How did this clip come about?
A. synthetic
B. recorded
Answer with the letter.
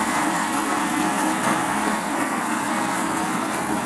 A